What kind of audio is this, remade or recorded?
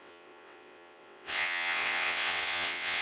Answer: remade